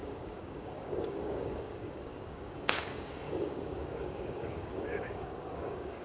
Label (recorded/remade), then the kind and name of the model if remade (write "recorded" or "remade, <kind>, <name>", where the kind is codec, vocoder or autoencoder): remade, codec, DAC